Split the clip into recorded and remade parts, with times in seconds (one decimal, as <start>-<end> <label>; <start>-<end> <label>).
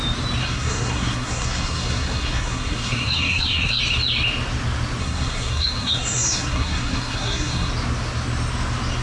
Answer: 0.0-0.4 recorded; 0.4-3.8 remade; 3.8-5.0 recorded; 5.0-7.7 remade; 7.7-9.0 recorded